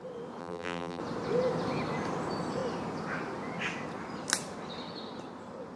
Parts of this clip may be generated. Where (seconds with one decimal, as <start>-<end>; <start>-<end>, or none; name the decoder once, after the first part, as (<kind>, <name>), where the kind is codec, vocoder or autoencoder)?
0.4-1.0 (vocoder, BigVGAN v2)

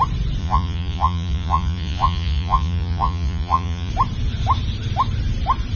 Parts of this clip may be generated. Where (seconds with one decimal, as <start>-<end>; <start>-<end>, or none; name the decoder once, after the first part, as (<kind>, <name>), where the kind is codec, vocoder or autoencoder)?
0.4-3.9 (vocoder, Vocos)

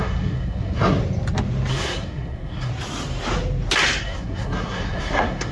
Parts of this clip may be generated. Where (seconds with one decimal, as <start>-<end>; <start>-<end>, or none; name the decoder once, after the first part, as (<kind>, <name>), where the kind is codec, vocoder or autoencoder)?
0.0-1.0 (codec, SNAC); 1.7-2.7; 4.0-5.5

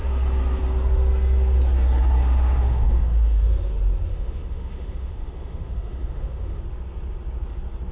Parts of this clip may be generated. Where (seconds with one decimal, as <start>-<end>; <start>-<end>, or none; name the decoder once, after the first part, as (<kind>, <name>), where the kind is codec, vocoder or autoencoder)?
2.2-3.4 (autoencoder, DAC-VAE); 4.1-6.6

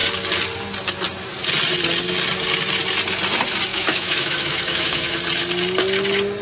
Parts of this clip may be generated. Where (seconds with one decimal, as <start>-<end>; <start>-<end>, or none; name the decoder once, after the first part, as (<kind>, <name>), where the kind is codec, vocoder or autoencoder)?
3.7-5.2 (autoencoder, DAC-VAE)

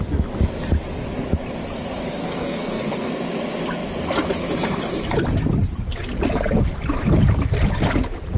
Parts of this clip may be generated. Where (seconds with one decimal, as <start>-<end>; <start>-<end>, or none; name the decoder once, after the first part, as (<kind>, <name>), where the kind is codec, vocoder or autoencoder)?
2.2-3.1 (codec, SNAC)

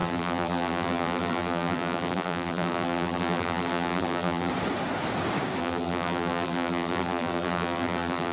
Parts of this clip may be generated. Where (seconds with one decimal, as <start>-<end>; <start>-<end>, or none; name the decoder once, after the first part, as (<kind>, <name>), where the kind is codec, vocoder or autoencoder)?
0.0-4.5 (vocoder, BigVGAN v2); 5.6-8.3

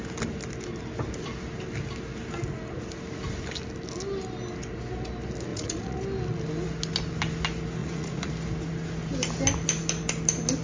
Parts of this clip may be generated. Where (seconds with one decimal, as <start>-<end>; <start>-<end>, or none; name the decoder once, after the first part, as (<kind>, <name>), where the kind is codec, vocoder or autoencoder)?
5.5-6.0 (vocoder, Vocos); 7.8-8.3